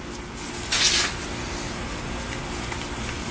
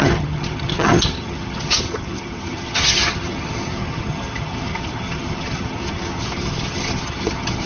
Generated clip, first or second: second